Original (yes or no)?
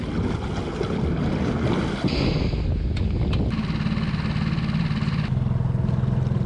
yes